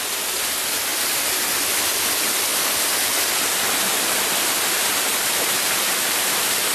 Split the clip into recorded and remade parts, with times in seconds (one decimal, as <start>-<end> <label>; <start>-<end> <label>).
0.0-0.9 remade; 0.9-1.9 recorded; 1.9-2.5 remade; 2.5-4.0 recorded; 4.0-6.7 remade